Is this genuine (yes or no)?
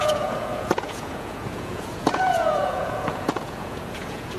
no